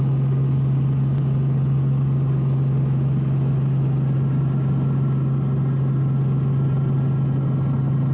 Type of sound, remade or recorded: recorded